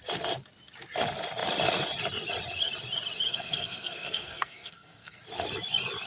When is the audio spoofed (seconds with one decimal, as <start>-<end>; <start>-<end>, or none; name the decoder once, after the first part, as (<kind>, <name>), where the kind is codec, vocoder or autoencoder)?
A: 3.3-5.2 (codec, SNAC)